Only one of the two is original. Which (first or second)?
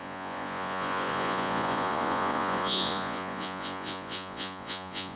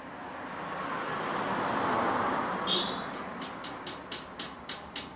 second